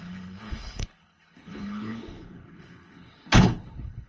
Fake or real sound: fake